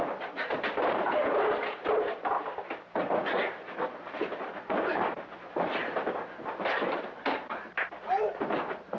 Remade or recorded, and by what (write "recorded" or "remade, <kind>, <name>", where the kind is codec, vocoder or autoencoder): remade, vocoder, BigVGAN v2